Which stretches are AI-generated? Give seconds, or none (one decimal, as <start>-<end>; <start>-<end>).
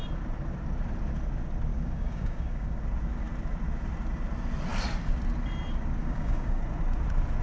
1.7-2.8; 6.0-6.6